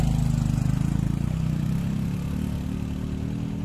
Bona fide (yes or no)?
yes